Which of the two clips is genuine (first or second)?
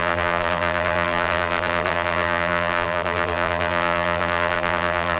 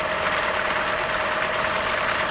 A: second